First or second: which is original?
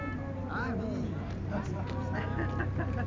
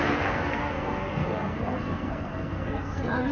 first